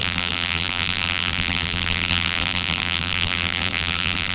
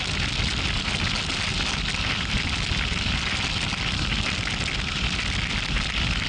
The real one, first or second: second